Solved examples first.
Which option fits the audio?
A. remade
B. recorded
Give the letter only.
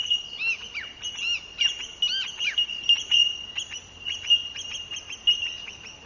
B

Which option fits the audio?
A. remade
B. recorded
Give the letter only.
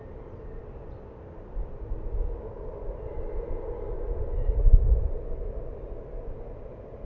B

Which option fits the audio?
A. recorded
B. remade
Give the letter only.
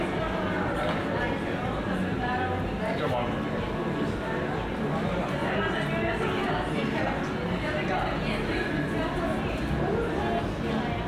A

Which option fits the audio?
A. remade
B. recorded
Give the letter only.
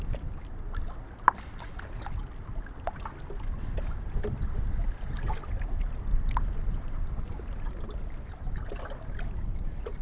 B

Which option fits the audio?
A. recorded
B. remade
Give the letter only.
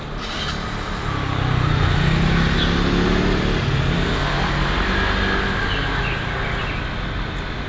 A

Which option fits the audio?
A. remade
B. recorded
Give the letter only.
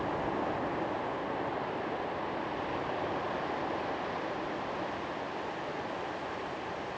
B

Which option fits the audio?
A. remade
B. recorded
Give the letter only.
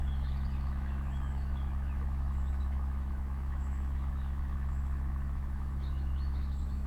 A